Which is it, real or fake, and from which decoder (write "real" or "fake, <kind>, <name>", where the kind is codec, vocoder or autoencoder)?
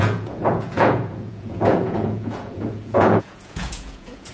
fake, vocoder, Vocos